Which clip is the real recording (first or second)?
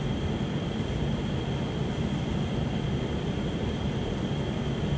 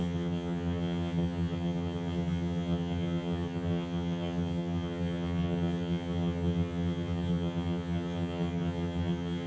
first